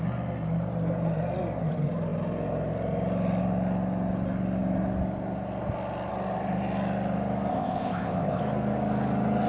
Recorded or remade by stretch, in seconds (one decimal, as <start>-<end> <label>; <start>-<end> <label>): 0.0-7.5 recorded; 7.5-8.4 remade; 8.4-9.5 recorded